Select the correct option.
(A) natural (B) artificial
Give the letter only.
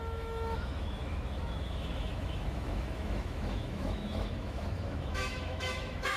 B